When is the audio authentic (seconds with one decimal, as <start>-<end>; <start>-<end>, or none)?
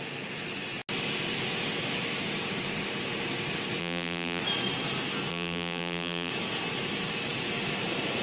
0.0-3.8; 4.4-5.3; 6.3-8.2